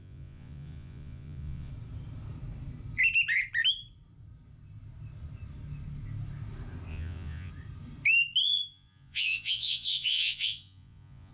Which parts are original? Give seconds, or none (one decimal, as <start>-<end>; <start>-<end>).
1.7-6.9; 7.5-8.4